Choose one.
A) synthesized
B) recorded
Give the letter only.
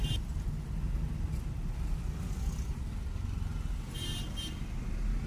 B